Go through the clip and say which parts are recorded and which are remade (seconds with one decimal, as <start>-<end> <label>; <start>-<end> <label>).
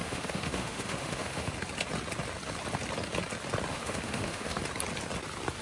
0.0-1.5 remade; 1.5-3.7 recorded; 3.7-4.6 remade; 4.6-5.6 recorded